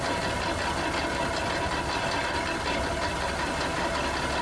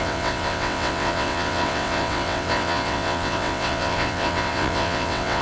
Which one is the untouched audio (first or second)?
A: first